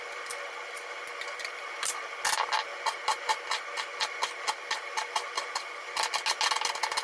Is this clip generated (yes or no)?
no